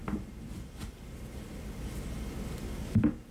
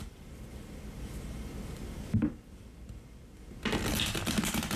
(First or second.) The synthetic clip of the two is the second